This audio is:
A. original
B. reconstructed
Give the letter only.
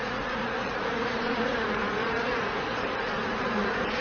B